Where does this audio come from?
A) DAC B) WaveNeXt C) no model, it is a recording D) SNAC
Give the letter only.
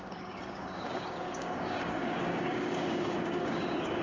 A